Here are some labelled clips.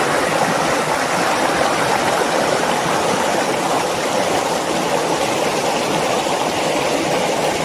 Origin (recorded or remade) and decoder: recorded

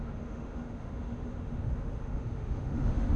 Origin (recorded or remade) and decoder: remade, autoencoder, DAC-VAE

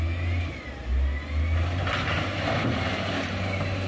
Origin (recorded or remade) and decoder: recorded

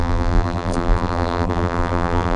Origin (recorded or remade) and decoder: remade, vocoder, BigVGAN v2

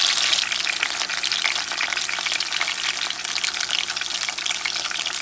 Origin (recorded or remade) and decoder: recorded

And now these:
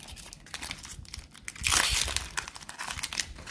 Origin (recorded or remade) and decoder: recorded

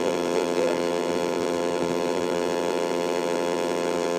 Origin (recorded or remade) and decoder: remade, vocoder, BigVGAN v2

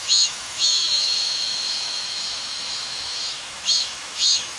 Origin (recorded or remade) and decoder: remade, autoencoder, DAC-VAE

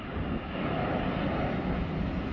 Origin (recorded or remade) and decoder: recorded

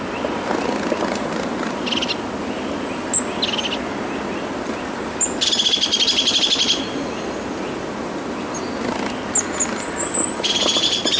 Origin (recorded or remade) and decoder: recorded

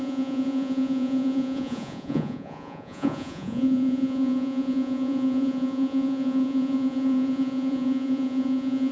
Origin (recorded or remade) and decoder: remade, vocoder, Vocos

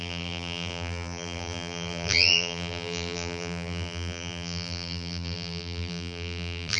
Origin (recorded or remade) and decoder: remade, vocoder, BigVGAN v2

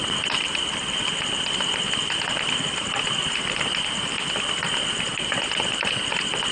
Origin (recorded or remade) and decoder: remade, vocoder, BigVGAN v2